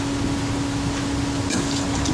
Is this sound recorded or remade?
recorded